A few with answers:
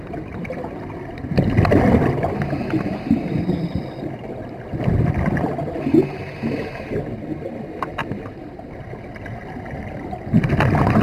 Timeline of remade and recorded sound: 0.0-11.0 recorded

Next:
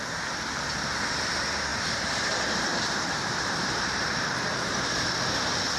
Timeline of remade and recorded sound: 0.0-1.7 recorded; 1.7-5.2 remade; 5.2-5.8 recorded